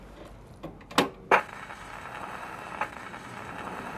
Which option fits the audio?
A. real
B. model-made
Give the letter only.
A